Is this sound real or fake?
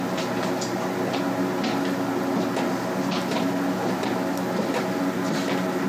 real